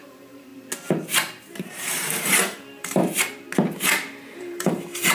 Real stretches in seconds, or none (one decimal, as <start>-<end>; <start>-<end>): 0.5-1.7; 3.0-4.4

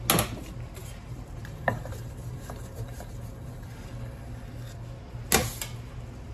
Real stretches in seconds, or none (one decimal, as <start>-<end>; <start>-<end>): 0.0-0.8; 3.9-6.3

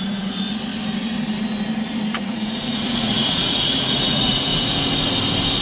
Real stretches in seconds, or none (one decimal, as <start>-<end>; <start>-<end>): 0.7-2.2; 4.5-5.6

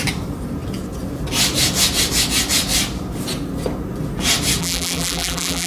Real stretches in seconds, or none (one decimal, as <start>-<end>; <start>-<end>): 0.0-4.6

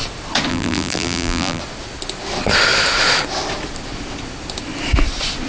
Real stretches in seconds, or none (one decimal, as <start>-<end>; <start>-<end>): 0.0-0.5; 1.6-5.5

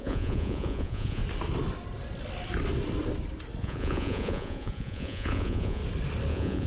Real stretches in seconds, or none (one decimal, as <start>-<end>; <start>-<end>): 1.2-3.6; 5.8-6.3

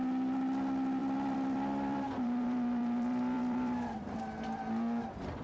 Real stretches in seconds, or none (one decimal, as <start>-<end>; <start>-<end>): 0.0-1.0; 4.2-5.4